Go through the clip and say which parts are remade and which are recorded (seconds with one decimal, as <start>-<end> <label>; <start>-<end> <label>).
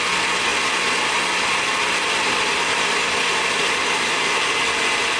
0.0-5.2 recorded